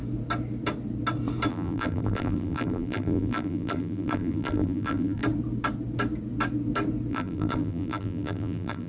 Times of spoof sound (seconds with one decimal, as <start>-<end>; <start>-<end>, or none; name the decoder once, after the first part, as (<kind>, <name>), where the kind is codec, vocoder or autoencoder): 1.5-5.2 (vocoder, BigVGAN v2); 7.1-8.9